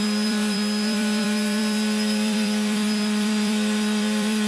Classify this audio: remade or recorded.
remade